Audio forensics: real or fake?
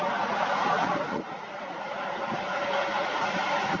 fake